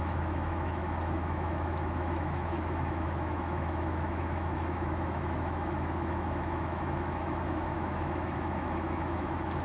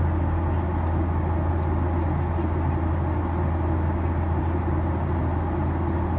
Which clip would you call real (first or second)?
second